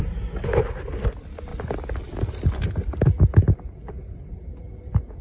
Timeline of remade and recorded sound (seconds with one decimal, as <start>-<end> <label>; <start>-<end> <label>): 0.0-5.2 recorded